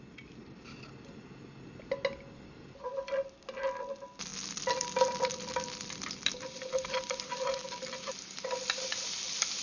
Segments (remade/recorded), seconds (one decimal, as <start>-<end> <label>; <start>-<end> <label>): 0.0-9.6 recorded